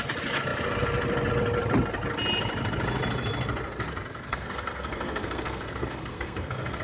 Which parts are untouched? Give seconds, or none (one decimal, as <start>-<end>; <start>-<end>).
0.0-4.3